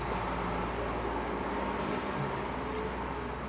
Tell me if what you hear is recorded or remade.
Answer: recorded